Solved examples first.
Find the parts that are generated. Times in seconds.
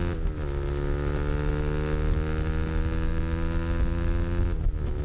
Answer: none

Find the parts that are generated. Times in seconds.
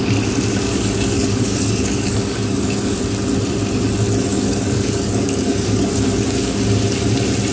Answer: 0.5-3.0 (codec, DAC); 4.3-6.6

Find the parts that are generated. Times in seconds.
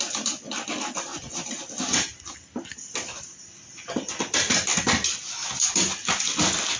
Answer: none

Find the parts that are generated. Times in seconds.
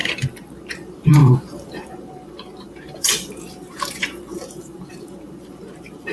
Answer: 0.0-6.1 (vocoder, BigVGAN v2)